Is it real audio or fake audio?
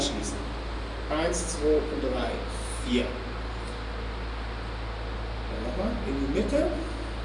real